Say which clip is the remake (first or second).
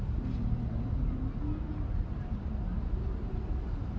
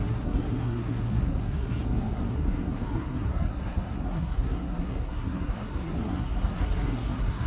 second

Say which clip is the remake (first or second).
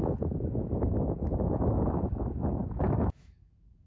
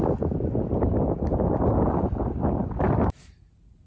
first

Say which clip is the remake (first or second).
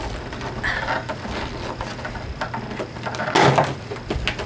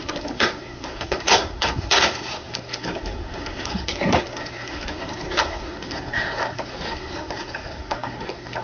second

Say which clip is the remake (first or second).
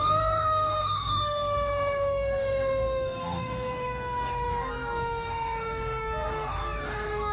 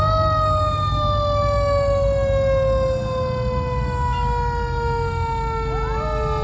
first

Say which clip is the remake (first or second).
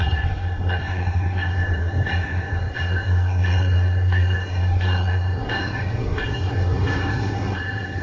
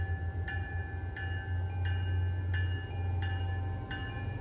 first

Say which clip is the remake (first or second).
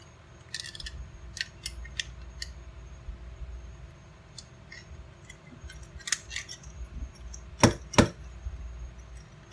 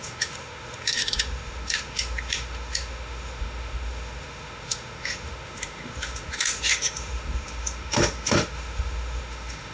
second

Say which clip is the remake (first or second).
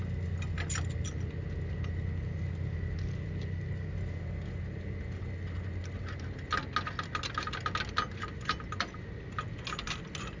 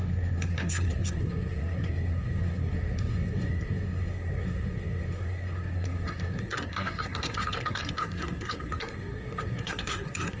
second